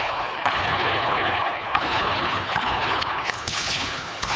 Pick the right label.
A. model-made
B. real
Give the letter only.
A